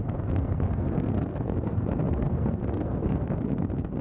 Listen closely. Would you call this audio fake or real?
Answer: fake